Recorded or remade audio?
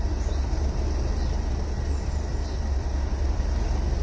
recorded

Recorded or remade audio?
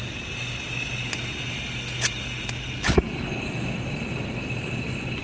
recorded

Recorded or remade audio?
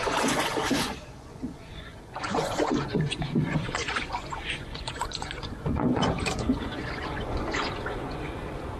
remade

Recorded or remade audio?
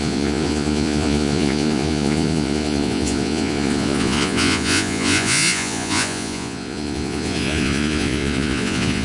remade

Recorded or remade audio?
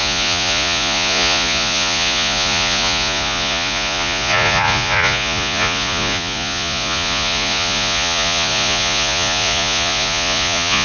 remade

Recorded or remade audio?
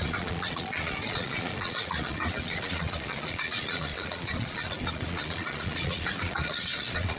remade